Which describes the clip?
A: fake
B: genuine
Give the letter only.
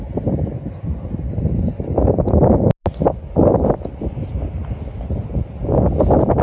B